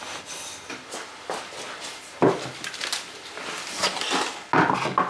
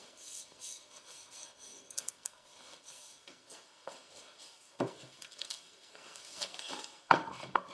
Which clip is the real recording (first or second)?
first